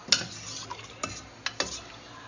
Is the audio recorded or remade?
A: recorded